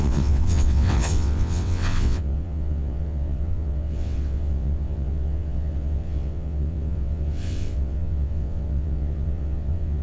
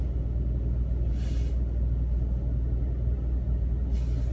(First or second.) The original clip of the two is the second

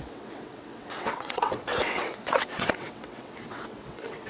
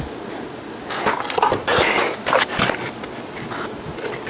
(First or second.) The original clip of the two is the second